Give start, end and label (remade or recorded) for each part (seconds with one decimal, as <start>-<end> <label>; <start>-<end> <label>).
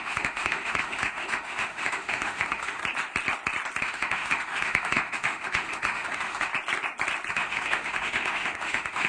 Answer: 0.0-2.8 remade; 2.8-3.8 recorded; 3.8-6.5 remade; 6.5-7.3 recorded; 7.3-9.1 remade